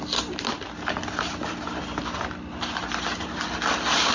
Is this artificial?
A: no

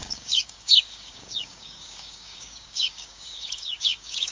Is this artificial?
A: yes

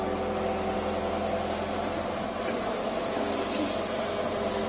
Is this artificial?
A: no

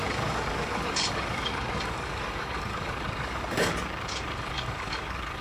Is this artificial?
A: yes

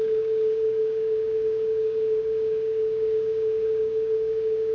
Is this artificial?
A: yes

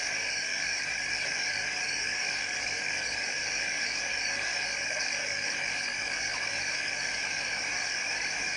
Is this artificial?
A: yes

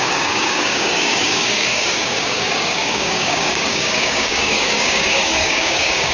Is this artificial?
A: yes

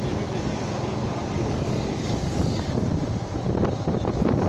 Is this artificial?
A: no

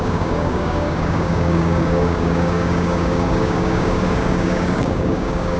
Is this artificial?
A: yes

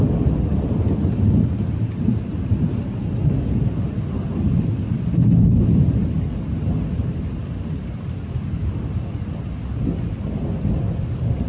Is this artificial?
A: no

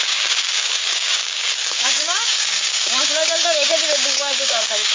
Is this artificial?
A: yes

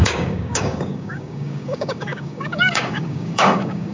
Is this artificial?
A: yes